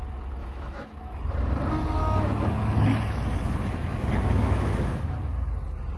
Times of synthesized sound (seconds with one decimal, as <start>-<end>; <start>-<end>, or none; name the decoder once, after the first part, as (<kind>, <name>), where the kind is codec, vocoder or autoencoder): 0.4-1.2 (autoencoder, DAC-VAE); 2.0-5.1